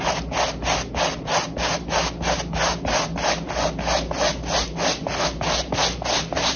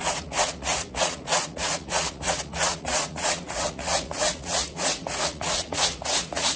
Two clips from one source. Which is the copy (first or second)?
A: second